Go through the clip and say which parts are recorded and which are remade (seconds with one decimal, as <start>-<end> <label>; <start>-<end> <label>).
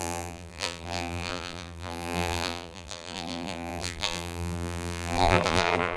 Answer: 0.0-6.0 remade